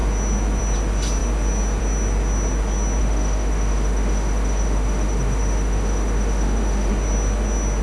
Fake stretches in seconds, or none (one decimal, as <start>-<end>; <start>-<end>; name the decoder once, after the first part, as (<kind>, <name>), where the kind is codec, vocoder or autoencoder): 3.0-6.9 (autoencoder, DAC-VAE)

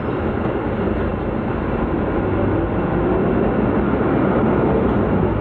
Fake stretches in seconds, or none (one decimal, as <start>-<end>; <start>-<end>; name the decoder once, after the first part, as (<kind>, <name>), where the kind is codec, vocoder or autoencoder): none